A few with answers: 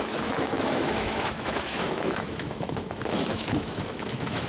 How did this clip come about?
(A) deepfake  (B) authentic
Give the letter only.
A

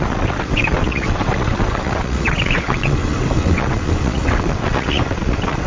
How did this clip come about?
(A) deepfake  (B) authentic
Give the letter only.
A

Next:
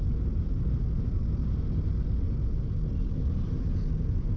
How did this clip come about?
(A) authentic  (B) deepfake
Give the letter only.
A